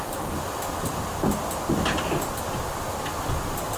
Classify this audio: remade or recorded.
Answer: recorded